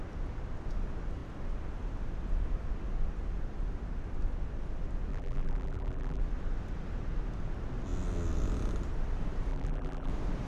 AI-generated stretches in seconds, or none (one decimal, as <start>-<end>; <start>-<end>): 5.1-6.2; 9.5-10.1